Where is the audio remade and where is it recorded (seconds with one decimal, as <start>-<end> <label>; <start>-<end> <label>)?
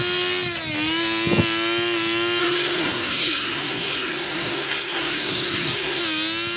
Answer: 0.0-2.4 recorded; 2.4-6.0 remade; 6.0-6.6 recorded